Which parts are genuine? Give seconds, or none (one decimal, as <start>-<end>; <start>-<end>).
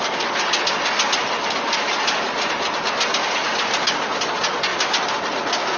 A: 0.0-5.8